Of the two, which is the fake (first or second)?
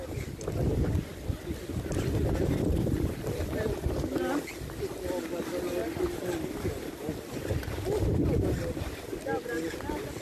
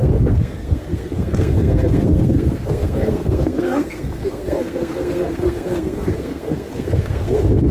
second